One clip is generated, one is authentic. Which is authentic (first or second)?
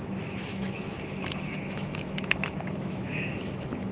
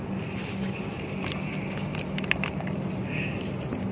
second